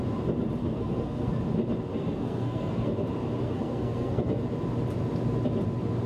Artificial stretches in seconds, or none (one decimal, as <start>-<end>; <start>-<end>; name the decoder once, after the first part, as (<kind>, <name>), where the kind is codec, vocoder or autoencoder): 0.6-1.4 (codec, SNAC); 1.9-2.9; 3.4-4.4